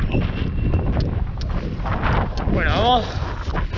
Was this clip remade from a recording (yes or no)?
no